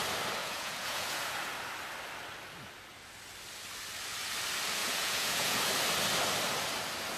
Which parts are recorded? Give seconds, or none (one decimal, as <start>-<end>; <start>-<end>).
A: 0.0-0.4; 1.5-4.8; 5.6-7.2